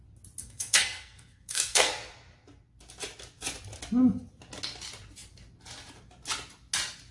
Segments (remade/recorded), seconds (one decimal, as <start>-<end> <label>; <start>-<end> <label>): 0.0-0.4 recorded; 0.4-1.9 remade; 1.9-7.1 recorded